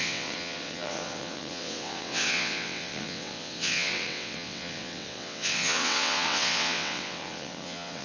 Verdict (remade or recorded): remade